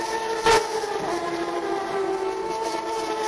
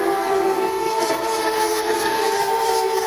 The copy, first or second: second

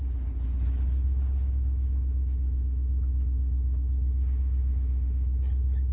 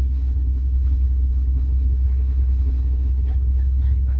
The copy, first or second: second